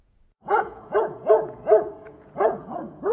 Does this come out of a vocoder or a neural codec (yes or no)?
yes